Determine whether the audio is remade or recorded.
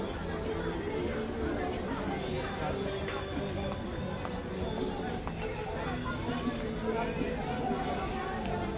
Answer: recorded